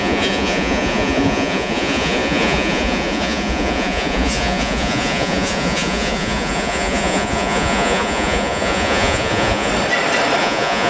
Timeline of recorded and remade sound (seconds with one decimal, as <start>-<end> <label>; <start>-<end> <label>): 0.0-9.7 remade; 9.7-10.4 recorded; 10.4-10.9 remade